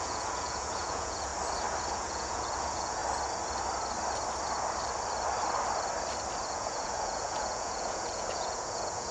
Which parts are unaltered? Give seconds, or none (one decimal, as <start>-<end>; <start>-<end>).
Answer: 1.3-1.9; 3.0-6.5